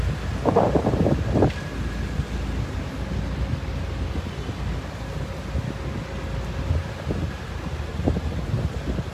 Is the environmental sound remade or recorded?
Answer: recorded